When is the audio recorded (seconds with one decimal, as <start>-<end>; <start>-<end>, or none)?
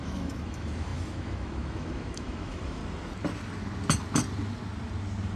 2.8-5.4